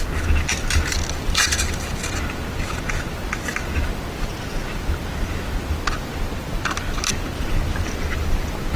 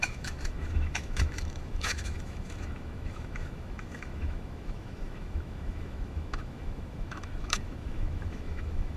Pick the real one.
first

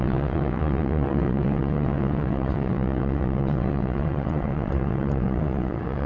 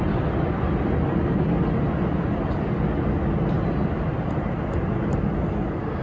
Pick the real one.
second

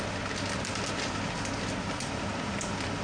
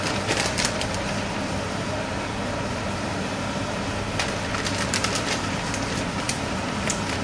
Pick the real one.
first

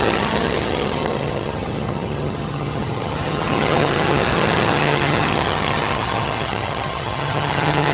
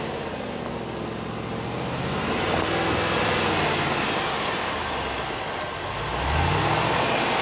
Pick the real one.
second